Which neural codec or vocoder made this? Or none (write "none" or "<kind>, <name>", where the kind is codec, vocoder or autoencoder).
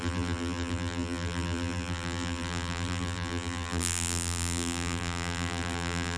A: vocoder, BigVGAN v2